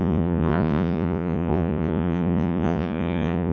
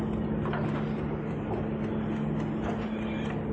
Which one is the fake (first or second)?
first